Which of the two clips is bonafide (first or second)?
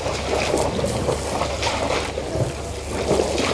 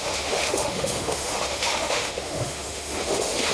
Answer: first